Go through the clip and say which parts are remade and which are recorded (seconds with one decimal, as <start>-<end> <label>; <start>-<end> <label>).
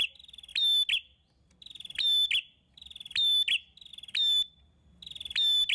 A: 0.0-5.7 recorded